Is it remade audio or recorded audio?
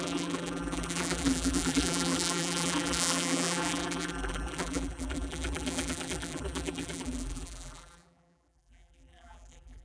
remade